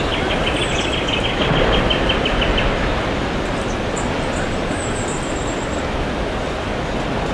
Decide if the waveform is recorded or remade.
recorded